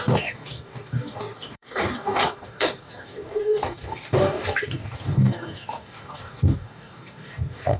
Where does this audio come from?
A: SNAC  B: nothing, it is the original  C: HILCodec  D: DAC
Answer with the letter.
D